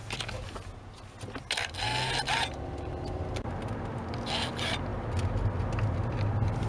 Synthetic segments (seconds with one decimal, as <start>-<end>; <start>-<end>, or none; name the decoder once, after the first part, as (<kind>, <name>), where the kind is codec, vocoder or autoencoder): none